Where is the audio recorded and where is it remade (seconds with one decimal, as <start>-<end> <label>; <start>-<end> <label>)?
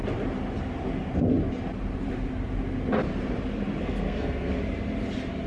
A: 0.0-3.8 recorded; 3.8-4.6 remade; 4.6-5.5 recorded